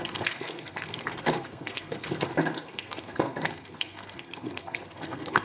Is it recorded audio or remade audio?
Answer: remade